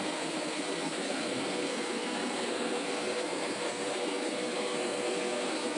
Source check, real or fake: fake